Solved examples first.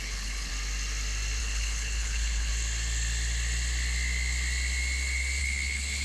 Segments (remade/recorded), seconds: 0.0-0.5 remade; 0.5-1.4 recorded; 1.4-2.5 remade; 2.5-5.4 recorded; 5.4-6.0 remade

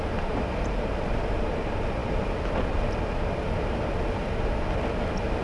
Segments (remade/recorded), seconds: 0.0-5.4 recorded

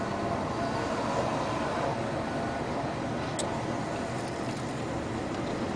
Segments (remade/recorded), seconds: 0.0-5.8 recorded

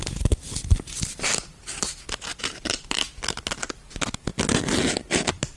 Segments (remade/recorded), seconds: 0.0-2.3 recorded; 2.3-3.1 remade; 3.1-5.6 recorded

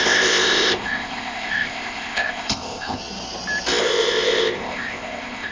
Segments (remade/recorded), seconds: 0.0-3.0 remade; 3.0-3.8 recorded; 3.8-5.5 remade

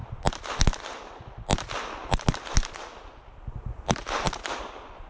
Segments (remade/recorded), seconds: 0.0-5.1 recorded

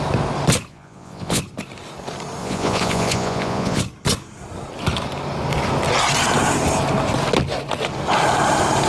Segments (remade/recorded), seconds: 0.0-0.7 recorded; 0.7-1.4 remade; 1.4-2.4 recorded; 2.4-3.8 remade; 3.8-8.9 recorded

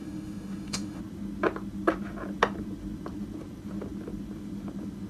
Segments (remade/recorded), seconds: 0.0-1.0 remade; 1.0-5.1 recorded